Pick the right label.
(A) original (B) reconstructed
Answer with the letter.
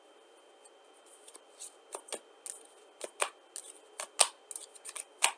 A